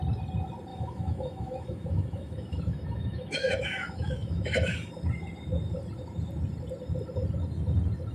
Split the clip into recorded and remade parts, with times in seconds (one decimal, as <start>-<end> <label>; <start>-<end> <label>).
0.0-0.7 recorded; 0.7-4.9 remade; 4.9-8.1 recorded